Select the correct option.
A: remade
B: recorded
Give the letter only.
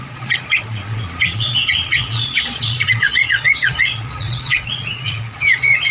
A